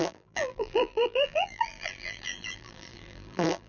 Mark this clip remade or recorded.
remade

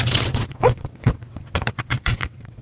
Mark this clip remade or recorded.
remade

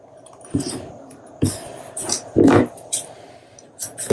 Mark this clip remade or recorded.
remade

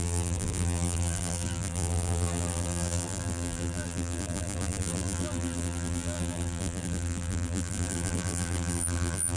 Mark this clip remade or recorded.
remade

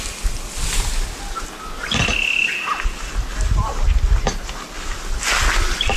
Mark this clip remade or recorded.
recorded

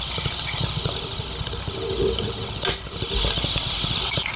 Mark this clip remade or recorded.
recorded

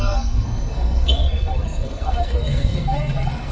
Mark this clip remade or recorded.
remade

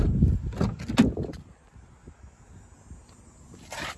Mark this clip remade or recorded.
recorded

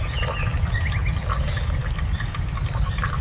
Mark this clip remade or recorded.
recorded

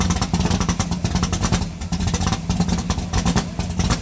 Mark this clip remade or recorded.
recorded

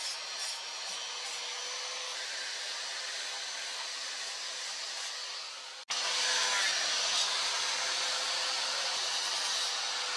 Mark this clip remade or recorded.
recorded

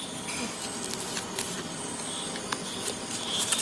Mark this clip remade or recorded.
recorded